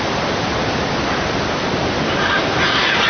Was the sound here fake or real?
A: real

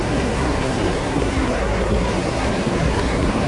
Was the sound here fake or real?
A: fake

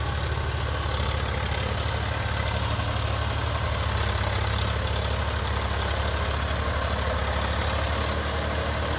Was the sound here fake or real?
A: real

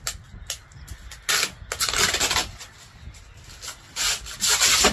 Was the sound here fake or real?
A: real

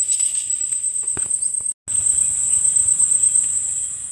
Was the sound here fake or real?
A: real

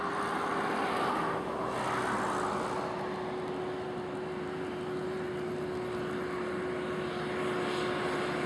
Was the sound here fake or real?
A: real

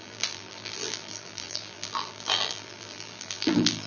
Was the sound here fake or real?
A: fake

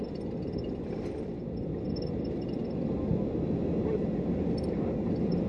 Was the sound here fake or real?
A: real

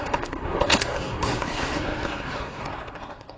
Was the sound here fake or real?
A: fake